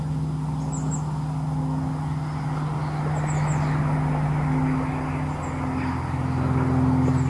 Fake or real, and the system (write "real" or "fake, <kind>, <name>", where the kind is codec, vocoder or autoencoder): real